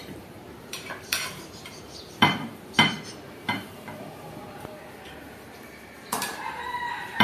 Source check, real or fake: fake